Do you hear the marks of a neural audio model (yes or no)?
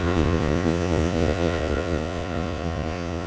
yes